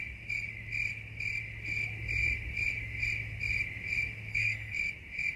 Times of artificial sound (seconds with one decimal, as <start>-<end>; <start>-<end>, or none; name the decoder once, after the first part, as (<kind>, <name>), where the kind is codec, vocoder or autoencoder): 4.3-4.8 (codec, SNAC)